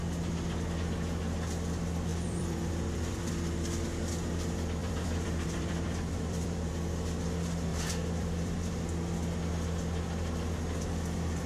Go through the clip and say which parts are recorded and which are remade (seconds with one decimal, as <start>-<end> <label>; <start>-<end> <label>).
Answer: 0.0-2.1 recorded; 2.1-3.3 remade; 3.3-4.8 recorded; 4.8-6.7 remade; 6.7-7.7 recorded; 7.7-8.7 remade; 8.7-11.5 recorded